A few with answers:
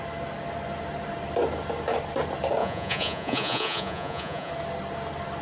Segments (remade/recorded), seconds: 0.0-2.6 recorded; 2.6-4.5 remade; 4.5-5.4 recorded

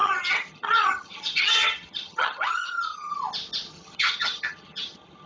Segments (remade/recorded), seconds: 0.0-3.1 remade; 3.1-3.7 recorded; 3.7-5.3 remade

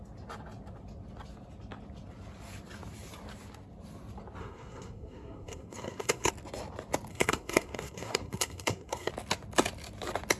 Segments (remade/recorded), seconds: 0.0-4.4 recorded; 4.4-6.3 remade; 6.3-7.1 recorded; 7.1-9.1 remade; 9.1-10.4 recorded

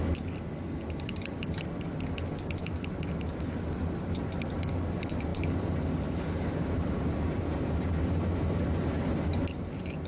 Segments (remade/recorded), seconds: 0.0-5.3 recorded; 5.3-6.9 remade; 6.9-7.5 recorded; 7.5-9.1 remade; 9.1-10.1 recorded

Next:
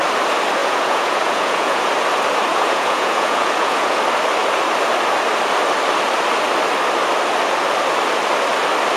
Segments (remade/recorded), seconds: 0.0-0.6 recorded; 0.6-1.9 remade; 1.9-2.5 recorded; 2.5-4.0 remade; 4.0-9.0 recorded

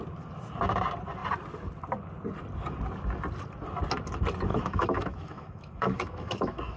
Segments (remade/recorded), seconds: 0.0-4.5 recorded; 4.5-6.8 remade

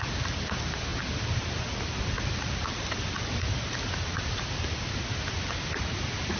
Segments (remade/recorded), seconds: 0.0-0.9 recorded; 0.9-4.7 remade; 4.7-6.4 recorded